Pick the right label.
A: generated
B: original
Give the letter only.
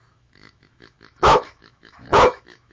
A